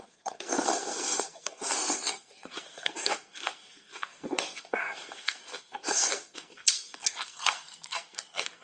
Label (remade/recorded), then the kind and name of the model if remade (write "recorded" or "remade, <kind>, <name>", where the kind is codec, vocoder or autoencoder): remade, codec, SNAC